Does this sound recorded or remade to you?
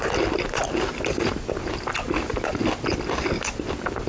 recorded